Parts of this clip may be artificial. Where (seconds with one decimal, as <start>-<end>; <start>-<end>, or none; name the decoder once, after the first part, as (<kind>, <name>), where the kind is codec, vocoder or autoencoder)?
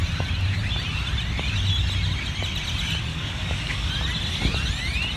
3.1-3.9 (codec, DAC)